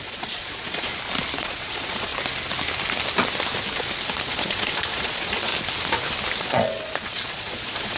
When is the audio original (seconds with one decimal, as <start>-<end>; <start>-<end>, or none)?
0.9-1.4; 2.1-4.2; 5.5-6.4